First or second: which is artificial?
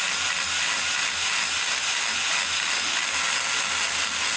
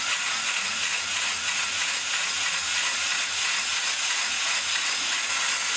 second